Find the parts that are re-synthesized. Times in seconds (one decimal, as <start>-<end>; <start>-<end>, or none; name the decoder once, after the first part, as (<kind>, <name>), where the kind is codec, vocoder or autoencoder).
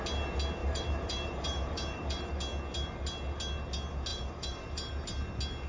0.6-2.4 (vocoder, BigVGAN v2); 4.1-4.9